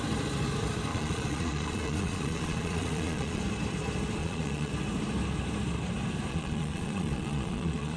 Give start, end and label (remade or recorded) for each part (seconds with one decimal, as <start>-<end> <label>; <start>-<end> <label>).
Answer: 0.0-0.9 recorded; 0.9-3.4 remade; 3.4-4.2 recorded; 4.2-4.7 remade; 4.7-6.3 recorded; 6.3-8.0 remade